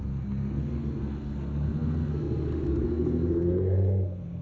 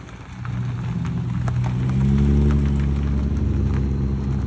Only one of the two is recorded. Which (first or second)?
second